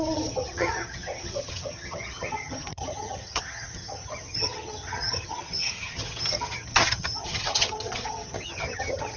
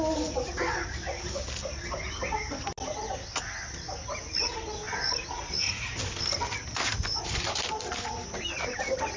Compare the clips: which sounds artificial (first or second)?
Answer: first